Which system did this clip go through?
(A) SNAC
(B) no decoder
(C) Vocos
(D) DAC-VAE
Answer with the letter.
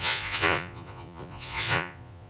C